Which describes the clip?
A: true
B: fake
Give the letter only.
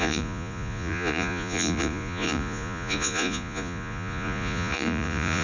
B